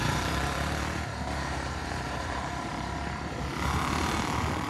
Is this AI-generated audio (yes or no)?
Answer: yes